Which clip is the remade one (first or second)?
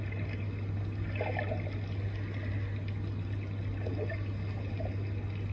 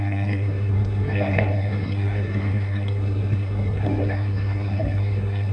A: second